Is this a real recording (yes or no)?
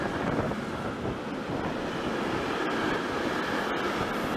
yes